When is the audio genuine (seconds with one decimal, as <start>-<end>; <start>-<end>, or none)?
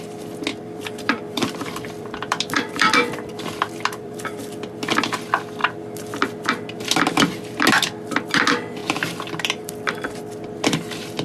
0.0-0.5; 4.5-8.8; 9.7-11.2